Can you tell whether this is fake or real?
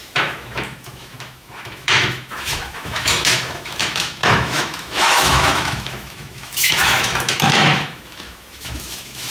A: fake